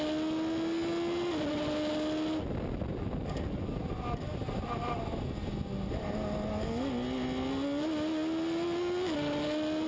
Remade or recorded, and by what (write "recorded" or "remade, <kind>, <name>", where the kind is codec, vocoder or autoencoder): recorded